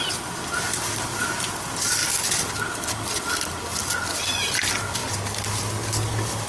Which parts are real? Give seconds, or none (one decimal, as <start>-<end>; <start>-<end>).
0.0-6.5